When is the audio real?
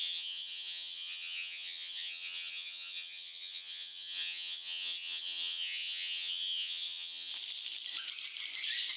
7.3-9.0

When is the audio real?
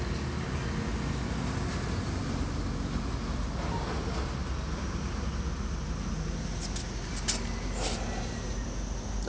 0.0-9.3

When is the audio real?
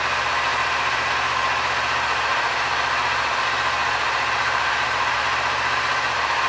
0.0-0.5; 1.1-3.8; 5.2-6.5